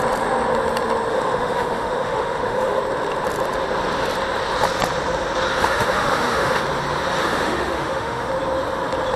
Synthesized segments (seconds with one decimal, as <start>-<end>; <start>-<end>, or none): 1.1-2.8; 5.6-6.6; 7.2-8.3